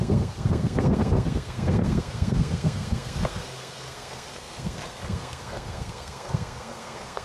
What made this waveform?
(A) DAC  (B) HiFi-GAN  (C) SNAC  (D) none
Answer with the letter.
C